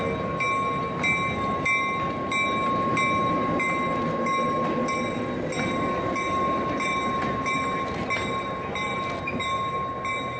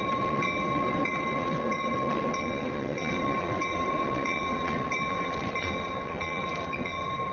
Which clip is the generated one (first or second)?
second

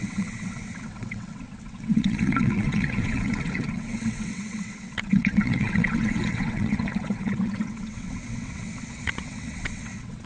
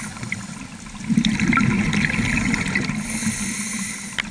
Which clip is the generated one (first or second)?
first